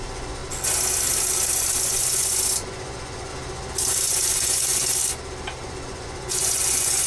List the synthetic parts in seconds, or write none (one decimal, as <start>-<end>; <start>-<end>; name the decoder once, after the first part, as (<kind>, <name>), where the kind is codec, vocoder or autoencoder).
0.0-0.4 (vocoder, Vocos); 1.8-3.3; 3.9-5.0; 5.6-7.1